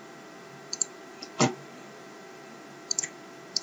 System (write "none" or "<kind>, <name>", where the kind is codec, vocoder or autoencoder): vocoder, BigVGAN v2